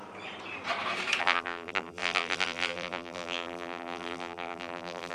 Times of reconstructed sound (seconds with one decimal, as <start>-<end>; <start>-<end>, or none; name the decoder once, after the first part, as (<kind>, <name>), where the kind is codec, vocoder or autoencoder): 1.2-5.1 (vocoder, BigVGAN v2)